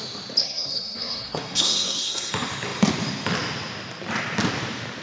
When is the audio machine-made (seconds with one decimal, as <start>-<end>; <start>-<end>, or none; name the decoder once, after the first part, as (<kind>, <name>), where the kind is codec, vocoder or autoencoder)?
0.4-2.3 (codec, SNAC)